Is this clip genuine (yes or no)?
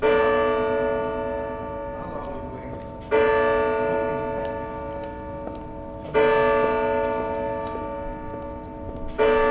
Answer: yes